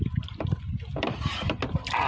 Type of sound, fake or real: real